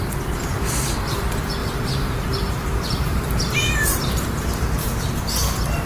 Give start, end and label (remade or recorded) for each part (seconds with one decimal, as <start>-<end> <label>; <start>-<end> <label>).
0.0-1.6 recorded; 1.6-5.1 remade; 5.1-5.9 recorded

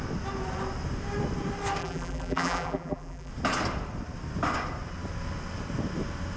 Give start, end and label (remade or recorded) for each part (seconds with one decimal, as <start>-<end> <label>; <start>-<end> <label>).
0.0-1.8 recorded; 1.8-3.3 remade; 3.3-6.4 recorded

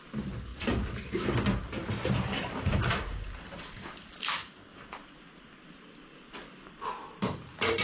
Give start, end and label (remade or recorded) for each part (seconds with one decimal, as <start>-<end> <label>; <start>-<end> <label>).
0.0-0.5 recorded; 0.5-1.1 remade; 1.1-1.8 recorded; 1.8-4.3 remade; 4.3-6.1 recorded; 6.1-6.9 remade; 6.9-7.8 recorded

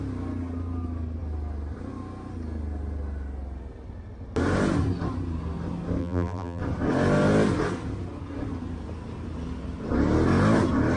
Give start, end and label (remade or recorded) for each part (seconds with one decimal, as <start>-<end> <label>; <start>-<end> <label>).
0.0-6.0 recorded; 6.0-6.6 remade; 6.6-11.0 recorded

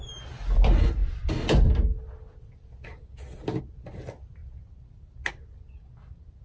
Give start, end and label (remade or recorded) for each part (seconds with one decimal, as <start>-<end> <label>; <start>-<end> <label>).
0.0-6.4 recorded